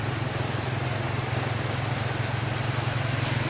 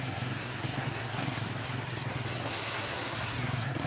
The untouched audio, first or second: first